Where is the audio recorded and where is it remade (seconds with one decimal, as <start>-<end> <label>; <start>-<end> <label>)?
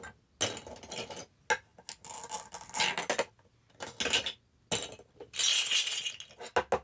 0.0-5.5 recorded; 5.5-6.1 remade; 6.1-6.8 recorded